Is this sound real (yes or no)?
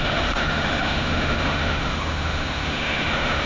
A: no